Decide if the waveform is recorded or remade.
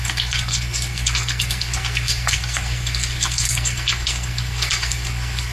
remade